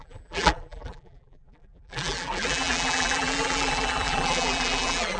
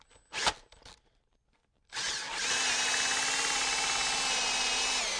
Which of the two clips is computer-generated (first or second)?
first